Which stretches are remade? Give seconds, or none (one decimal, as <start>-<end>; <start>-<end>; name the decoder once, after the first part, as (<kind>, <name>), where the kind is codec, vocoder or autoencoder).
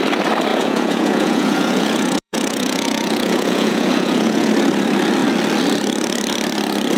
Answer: 0.5-4.5 (vocoder, Vocos)